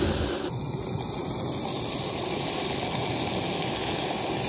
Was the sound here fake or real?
real